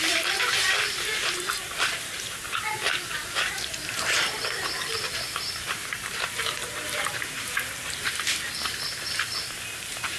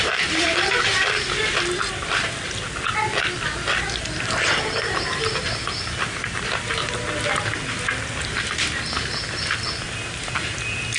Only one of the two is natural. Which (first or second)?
second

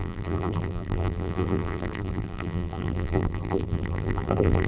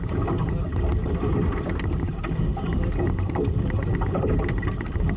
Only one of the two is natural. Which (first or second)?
second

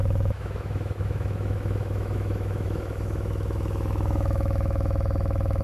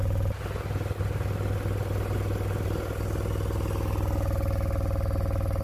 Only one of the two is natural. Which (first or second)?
second